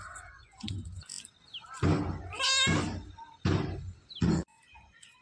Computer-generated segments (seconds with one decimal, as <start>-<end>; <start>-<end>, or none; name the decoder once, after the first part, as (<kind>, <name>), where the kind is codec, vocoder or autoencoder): 0.0-1.1 (vocoder, Vocos); 4.2-5.2